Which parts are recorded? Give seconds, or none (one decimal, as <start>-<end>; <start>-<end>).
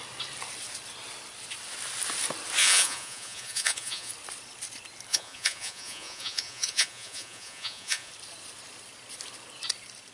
0.0-2.6; 4.1-5.1; 8.1-10.1